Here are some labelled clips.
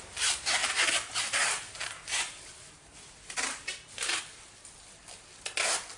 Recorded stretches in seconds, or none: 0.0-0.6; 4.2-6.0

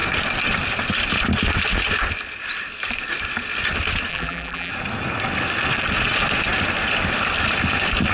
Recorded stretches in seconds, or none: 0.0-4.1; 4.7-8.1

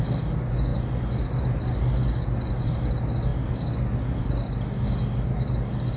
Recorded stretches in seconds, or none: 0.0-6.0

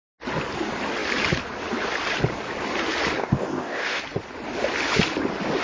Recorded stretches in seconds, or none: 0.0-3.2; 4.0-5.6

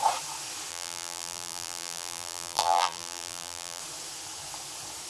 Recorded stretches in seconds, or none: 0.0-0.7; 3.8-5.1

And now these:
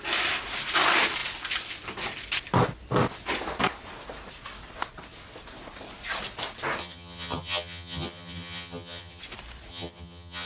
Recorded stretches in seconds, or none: 0.0-6.8; 9.2-9.7

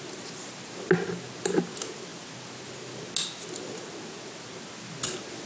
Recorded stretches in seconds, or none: 0.0-5.5